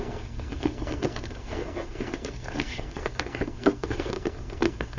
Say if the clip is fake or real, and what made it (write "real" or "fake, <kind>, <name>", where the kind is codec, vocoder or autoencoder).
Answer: fake, codec, SNAC